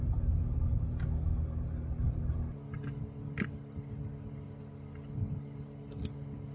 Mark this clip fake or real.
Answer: real